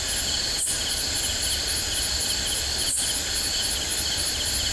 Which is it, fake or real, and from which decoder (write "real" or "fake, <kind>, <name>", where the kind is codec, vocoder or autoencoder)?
real